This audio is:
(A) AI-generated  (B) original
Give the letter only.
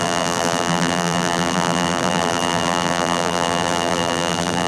A